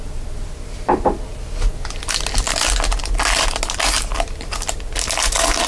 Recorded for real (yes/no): yes